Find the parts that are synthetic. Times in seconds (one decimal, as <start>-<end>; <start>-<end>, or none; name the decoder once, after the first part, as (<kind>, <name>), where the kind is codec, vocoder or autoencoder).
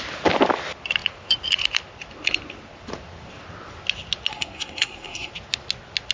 4.3-5.3 (codec, SNAC)